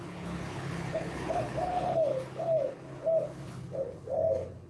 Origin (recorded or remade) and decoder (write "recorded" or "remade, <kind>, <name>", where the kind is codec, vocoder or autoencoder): remade, codec, HILCodec